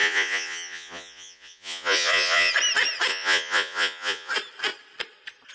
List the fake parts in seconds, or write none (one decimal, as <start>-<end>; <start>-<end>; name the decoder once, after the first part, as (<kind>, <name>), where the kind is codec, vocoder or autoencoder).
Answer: 0.0-2.5 (vocoder, Vocos); 3.1-4.3